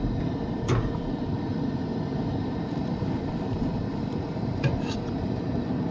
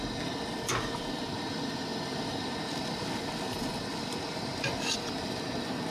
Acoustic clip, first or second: second